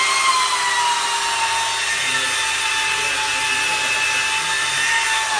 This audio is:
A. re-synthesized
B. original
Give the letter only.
B